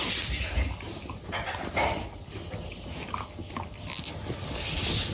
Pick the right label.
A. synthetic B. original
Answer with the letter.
B